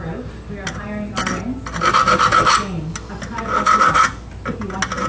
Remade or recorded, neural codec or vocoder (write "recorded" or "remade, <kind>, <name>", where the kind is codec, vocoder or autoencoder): recorded